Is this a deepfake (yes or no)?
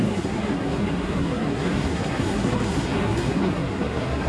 yes